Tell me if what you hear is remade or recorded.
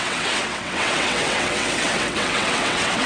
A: remade